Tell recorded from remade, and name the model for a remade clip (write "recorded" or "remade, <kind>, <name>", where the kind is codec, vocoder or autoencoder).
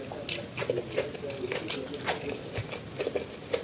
recorded